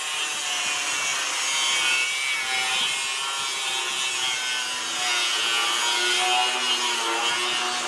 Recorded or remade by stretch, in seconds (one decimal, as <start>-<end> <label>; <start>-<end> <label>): 0.0-7.9 recorded